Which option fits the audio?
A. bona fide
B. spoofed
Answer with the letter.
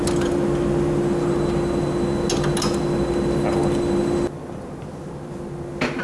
A